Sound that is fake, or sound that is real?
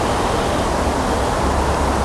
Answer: real